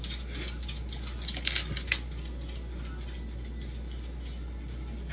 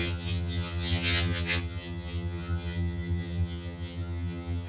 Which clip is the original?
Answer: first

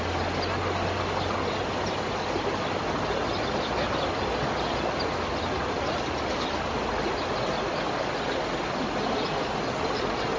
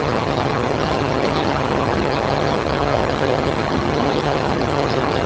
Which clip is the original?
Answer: first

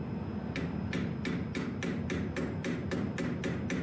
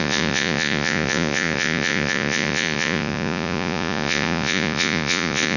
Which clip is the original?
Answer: first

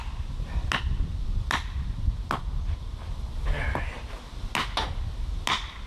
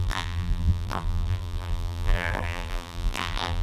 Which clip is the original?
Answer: first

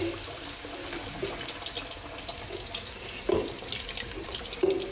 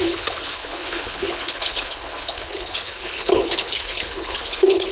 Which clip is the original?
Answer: first